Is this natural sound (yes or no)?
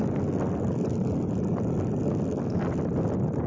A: yes